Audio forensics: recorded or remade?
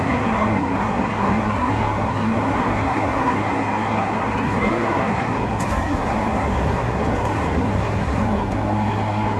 remade